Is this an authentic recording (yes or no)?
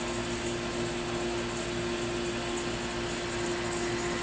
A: yes